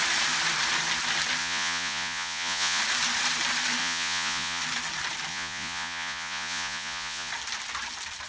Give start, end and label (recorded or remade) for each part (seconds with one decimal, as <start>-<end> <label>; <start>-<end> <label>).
0.0-1.4 recorded; 1.4-2.8 remade; 2.8-3.8 recorded; 3.8-4.6 remade; 4.6-5.3 recorded; 5.3-7.3 remade; 7.3-8.3 recorded